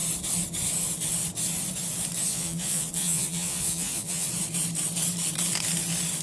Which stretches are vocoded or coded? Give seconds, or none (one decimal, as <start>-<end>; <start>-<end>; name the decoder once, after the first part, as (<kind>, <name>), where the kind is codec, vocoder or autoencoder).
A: 2.3-4.3 (vocoder, Vocos)